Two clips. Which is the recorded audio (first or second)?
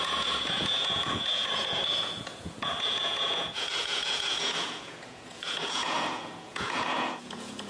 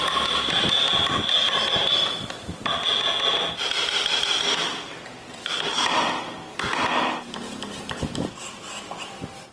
second